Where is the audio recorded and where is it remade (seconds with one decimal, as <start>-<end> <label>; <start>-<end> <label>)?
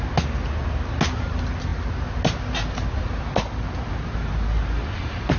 0.0-5.4 recorded